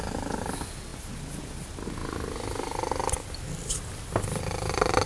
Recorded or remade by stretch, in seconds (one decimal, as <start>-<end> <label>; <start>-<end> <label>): 0.0-5.1 recorded